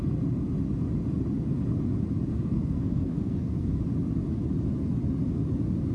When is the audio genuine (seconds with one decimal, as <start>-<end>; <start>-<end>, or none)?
0.0-2.3; 3.8-5.9